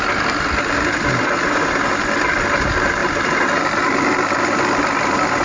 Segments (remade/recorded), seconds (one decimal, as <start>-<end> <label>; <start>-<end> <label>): 0.0-3.0 recorded; 3.0-3.8 remade; 3.8-5.4 recorded